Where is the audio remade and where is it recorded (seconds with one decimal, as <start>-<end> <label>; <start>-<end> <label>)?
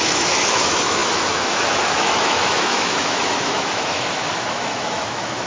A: 0.0-5.5 remade